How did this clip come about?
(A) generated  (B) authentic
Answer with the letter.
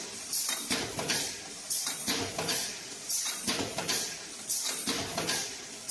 A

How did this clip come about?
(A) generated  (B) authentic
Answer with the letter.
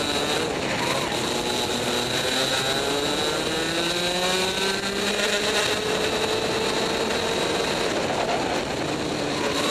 B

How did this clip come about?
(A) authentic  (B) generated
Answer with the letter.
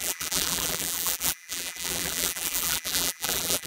B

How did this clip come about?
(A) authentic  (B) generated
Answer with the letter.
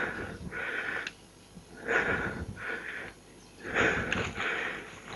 A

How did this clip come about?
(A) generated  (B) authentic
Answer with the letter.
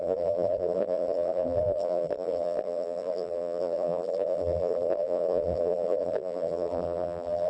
A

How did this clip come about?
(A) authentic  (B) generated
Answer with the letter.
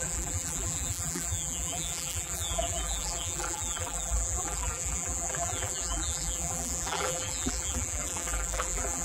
B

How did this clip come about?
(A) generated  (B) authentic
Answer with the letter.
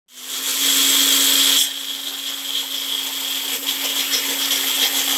B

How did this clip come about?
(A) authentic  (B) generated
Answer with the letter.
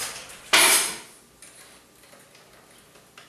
A